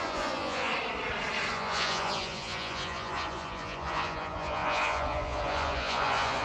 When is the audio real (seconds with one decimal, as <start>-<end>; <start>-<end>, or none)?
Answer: 0.7-1.5